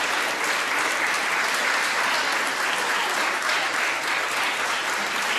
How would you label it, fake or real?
real